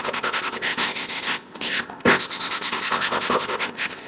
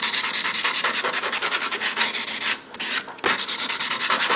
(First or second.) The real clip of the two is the second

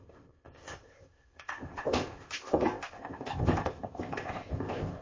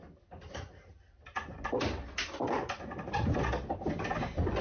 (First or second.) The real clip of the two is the second